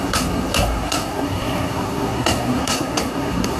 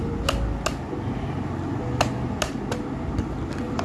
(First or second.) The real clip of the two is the second